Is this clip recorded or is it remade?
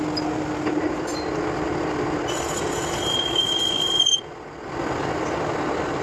recorded